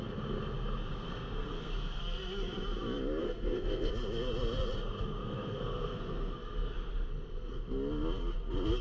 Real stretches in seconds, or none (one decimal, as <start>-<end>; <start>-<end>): 0.0-0.9; 2.0-3.2; 3.9-5.2; 7.6-8.8